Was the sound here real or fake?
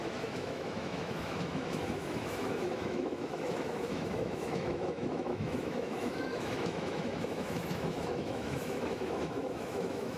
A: fake